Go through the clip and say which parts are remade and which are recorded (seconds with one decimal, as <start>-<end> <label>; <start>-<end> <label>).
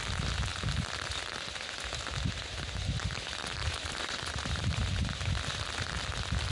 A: 0.0-3.6 recorded; 3.6-5.1 remade; 5.1-6.5 recorded